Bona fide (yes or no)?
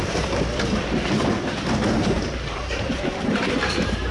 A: no